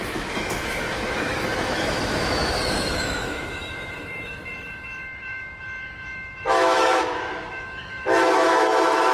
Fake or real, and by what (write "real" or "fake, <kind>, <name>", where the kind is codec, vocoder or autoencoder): fake, autoencoder, DAC-VAE